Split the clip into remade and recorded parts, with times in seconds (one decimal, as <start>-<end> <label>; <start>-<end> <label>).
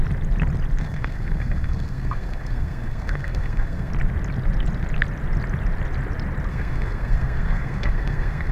0.0-0.8 recorded; 0.8-3.9 remade; 3.9-6.5 recorded; 6.5-8.5 remade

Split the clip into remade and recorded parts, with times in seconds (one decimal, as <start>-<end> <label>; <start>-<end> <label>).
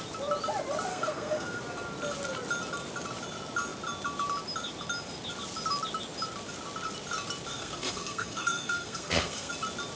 0.0-0.9 recorded; 0.9-1.6 remade; 1.6-7.5 recorded; 7.5-9.5 remade; 9.5-10.0 recorded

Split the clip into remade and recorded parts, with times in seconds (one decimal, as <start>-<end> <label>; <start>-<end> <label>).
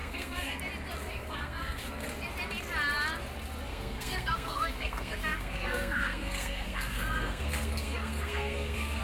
0.0-0.6 remade; 0.6-1.1 recorded; 1.1-1.8 remade; 1.8-3.7 recorded; 3.7-9.0 remade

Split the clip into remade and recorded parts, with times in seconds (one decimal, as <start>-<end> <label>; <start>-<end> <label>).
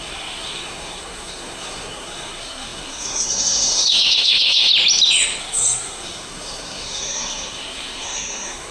0.0-4.7 remade; 4.7-5.4 recorded; 5.4-8.7 remade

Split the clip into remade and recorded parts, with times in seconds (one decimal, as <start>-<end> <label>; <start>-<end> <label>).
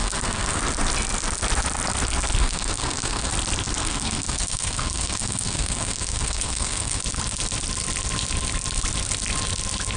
0.0-0.6 remade; 0.6-2.4 recorded; 2.4-3.3 remade; 3.3-3.8 recorded; 3.8-7.0 remade; 7.0-10.0 recorded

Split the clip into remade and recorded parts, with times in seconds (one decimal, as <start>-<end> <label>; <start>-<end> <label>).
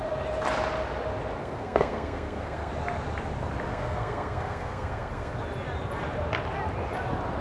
0.0-1.4 recorded; 1.4-2.7 remade; 2.7-3.7 recorded; 3.7-5.3 remade; 5.3-7.4 recorded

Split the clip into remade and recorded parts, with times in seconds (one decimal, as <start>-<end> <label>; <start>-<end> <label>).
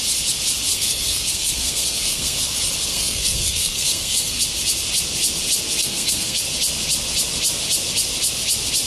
0.0-0.7 recorded; 0.7-2.4 remade; 2.4-2.9 recorded; 2.9-4.4 remade; 4.4-5.8 recorded; 5.8-6.4 remade; 6.4-8.9 recorded